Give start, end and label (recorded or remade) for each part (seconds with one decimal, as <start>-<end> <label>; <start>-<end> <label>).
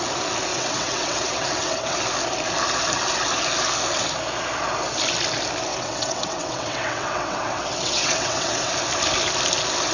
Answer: 0.0-0.5 recorded; 0.5-2.0 remade; 2.0-5.7 recorded; 5.7-8.7 remade; 8.7-9.9 recorded